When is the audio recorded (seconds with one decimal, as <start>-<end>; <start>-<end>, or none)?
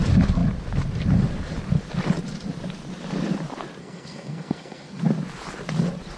0.0-3.8; 5.0-6.2